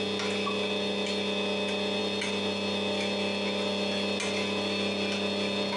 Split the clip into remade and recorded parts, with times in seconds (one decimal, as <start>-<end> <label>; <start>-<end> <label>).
0.0-5.8 recorded